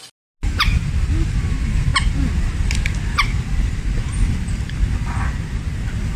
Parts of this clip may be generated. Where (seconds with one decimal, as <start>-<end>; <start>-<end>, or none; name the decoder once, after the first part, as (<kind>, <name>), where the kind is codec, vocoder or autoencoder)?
none